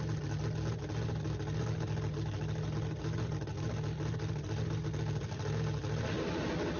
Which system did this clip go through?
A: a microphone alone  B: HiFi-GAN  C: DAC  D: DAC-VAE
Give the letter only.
A